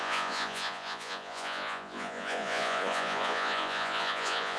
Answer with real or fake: fake